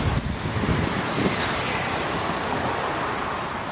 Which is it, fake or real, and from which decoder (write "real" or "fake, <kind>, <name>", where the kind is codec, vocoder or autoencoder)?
real